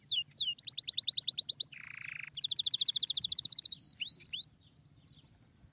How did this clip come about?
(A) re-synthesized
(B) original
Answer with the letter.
B